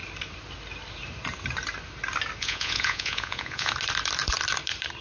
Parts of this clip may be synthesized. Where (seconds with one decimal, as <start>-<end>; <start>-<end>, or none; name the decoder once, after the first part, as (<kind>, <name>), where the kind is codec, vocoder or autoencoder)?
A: 2.4-3.7 (vocoder, Vocos)